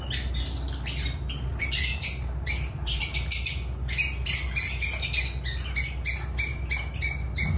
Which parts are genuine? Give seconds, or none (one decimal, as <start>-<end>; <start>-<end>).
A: 0.0-1.5; 3.0-7.6